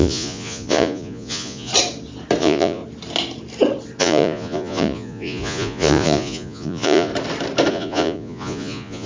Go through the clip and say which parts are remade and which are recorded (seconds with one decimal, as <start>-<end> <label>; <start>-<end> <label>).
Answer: 0.0-1.7 remade; 1.7-2.4 recorded; 2.4-2.8 remade; 2.8-4.0 recorded; 4.0-7.1 remade; 7.1-7.7 recorded; 7.7-9.1 remade